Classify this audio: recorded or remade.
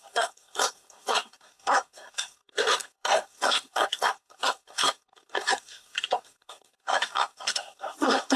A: remade